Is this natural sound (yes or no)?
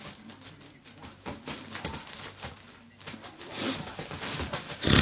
yes